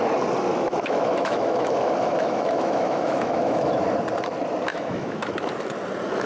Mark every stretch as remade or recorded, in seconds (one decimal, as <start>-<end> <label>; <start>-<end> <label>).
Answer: 0.0-0.5 recorded; 0.5-3.8 remade; 3.8-4.7 recorded; 4.7-5.5 remade; 5.5-6.3 recorded